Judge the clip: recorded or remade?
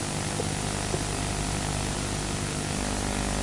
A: recorded